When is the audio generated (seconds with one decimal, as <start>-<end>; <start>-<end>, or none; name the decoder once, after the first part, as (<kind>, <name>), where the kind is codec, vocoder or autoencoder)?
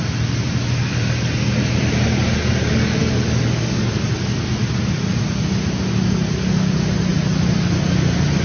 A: 3.0-3.9 (codec, DAC)